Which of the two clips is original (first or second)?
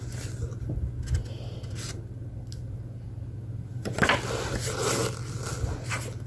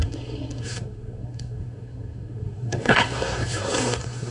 first